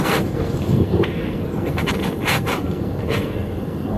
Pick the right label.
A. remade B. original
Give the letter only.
A